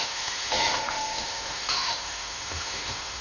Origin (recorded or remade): remade